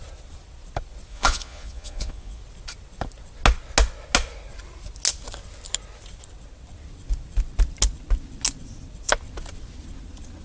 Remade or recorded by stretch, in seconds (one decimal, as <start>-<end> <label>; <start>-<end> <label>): 0.0-1.1 recorded; 1.1-2.4 remade; 2.4-10.4 recorded